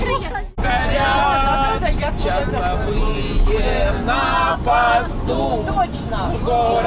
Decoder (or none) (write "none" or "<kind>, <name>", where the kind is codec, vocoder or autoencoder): none